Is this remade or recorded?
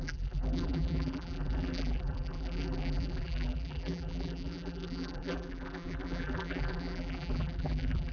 remade